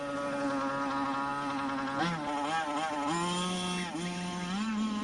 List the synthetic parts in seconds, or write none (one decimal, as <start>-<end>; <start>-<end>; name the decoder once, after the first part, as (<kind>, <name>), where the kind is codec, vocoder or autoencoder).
none